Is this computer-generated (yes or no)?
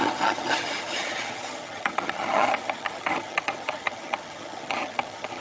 yes